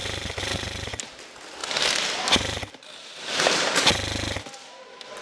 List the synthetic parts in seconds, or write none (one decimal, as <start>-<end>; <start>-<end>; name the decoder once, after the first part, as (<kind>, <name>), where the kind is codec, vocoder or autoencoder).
0.0-1.0 (vocoder, BigVGAN v2); 1.6-3.8